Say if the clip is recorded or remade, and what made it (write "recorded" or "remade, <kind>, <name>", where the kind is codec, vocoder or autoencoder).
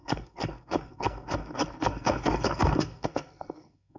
remade, codec, SNAC